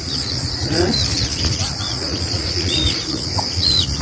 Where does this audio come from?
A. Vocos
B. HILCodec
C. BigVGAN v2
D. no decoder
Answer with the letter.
A